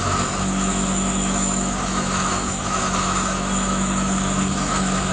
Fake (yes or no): yes